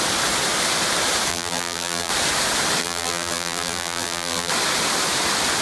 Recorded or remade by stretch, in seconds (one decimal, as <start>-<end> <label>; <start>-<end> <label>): 0.0-1.3 recorded; 1.3-2.1 remade; 2.1-2.8 recorded; 2.8-4.5 remade; 4.5-5.6 recorded